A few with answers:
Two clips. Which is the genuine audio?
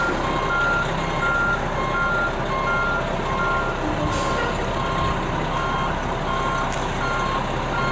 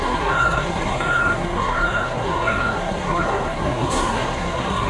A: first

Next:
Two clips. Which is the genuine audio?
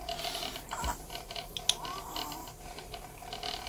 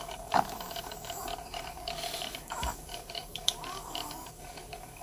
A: first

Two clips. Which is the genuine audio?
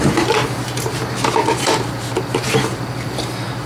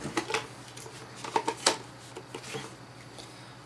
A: second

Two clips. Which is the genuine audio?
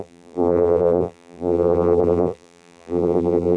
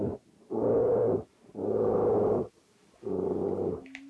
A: second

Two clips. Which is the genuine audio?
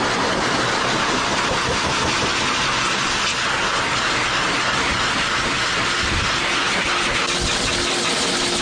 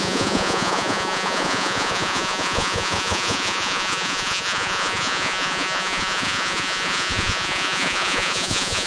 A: first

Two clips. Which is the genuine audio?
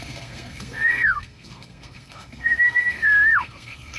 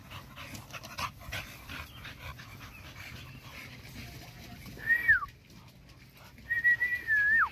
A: second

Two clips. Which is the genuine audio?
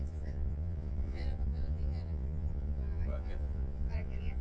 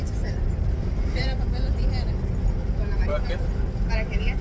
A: second